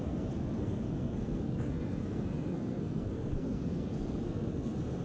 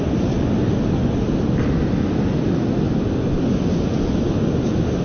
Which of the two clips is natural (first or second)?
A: second